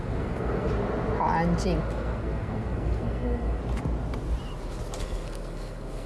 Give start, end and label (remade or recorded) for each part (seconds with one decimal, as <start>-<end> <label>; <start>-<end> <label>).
0.0-0.7 remade; 0.7-1.8 recorded; 1.8-3.6 remade; 3.6-5.0 recorded; 5.0-6.1 remade